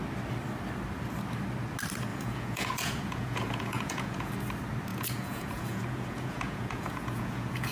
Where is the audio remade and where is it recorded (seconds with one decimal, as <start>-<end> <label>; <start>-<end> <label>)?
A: 0.0-2.1 recorded; 2.1-4.3 remade; 4.3-4.9 recorded; 4.9-7.7 remade